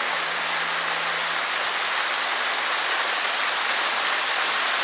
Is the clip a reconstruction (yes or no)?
no